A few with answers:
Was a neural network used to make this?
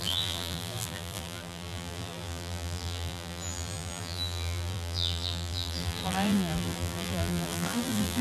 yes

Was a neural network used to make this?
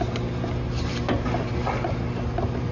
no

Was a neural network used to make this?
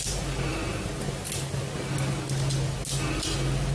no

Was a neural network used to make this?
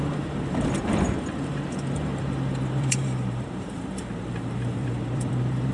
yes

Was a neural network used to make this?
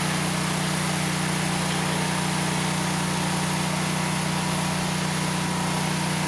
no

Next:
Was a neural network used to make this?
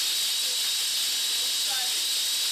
no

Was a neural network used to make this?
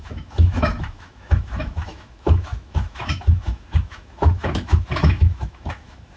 yes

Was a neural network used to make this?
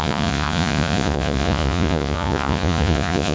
yes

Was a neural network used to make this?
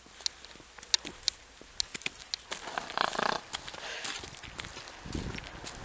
no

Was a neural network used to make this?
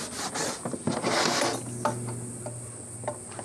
no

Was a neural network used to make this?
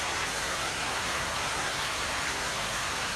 yes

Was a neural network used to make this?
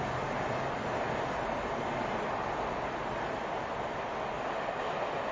no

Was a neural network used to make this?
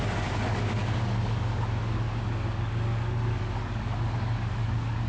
yes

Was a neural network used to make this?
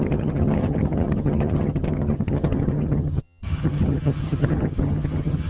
yes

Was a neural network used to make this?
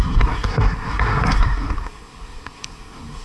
yes